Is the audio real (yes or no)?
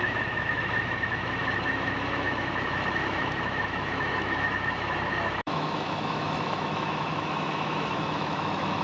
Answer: no